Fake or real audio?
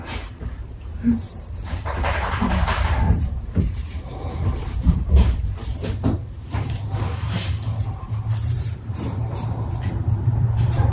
fake